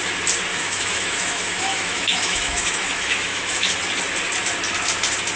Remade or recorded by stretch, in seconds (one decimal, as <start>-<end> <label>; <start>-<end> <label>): 0.0-0.5 recorded; 0.5-3.7 remade; 3.7-5.4 recorded